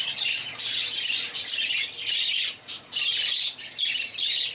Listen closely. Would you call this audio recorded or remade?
recorded